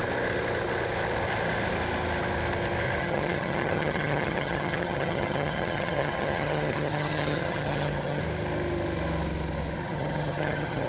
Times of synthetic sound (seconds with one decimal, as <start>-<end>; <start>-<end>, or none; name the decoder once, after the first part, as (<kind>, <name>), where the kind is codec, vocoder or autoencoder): 3.0-8.2 (vocoder, HiFi-GAN); 9.8-10.9